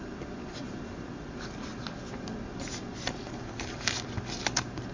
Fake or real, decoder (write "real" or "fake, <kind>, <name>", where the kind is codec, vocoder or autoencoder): fake, vocoder, BigVGAN v2